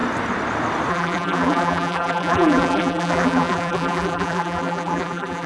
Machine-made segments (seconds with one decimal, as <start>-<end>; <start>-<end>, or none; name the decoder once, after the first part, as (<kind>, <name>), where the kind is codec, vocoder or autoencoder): 0.9-5.5 (vocoder, BigVGAN v2)